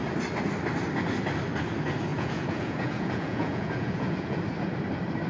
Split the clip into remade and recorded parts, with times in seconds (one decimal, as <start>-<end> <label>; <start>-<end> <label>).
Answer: 0.0-2.1 recorded; 2.1-4.4 remade; 4.4-5.3 recorded